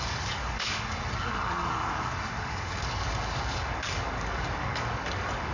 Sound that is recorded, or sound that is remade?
remade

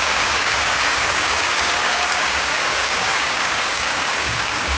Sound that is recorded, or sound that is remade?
remade